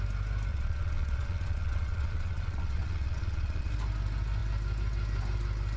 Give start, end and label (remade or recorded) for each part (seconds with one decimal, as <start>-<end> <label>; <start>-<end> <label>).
0.0-0.5 recorded; 0.5-3.7 remade; 3.7-5.8 recorded